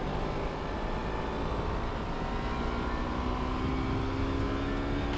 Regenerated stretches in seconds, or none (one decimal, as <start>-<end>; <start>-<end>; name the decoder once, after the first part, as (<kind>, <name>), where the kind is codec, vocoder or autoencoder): none